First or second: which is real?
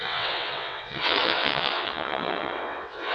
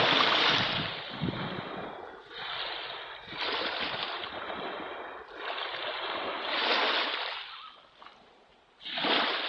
second